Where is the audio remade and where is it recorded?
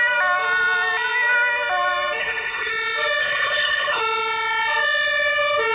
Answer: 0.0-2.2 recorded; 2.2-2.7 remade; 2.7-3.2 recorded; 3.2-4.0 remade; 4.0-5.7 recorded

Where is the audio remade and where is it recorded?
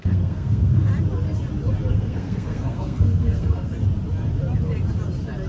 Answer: 0.0-0.9 remade; 0.9-1.9 recorded; 1.9-3.7 remade; 3.7-5.5 recorded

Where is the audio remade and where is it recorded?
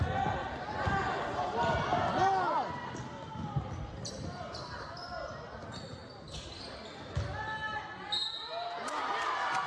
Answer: 0.0-9.7 recorded